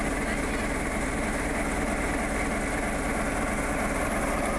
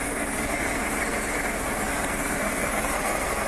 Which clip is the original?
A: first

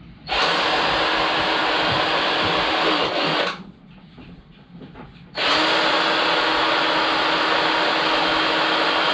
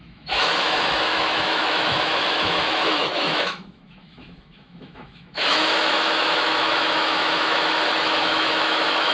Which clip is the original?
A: first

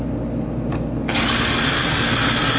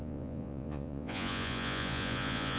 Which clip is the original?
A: first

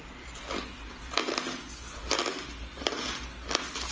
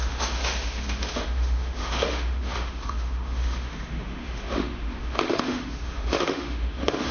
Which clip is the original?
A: first